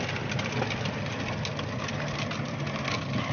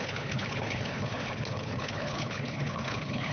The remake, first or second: second